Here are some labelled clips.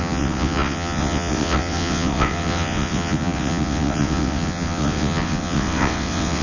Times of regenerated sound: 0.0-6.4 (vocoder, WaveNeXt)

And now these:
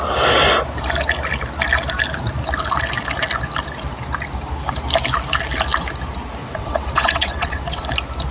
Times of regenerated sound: 6.4-7.8 (vocoder, WaveNeXt)

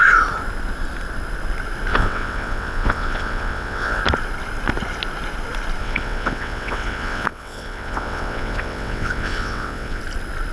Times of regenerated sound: 1.9-4.0 (vocoder, WaveNeXt); 5.8-10.0